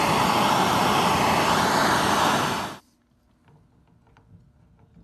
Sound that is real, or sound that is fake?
real